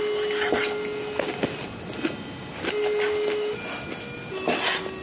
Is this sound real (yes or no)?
no